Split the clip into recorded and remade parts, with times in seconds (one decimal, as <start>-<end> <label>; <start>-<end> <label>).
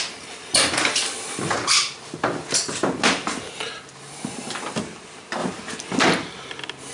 0.0-6.9 recorded